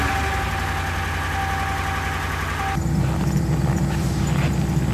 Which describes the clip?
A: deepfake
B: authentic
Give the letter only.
B